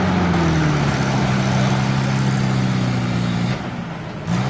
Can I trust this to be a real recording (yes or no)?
yes